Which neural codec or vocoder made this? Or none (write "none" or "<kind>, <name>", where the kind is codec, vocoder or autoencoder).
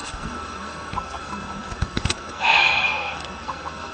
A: codec, SNAC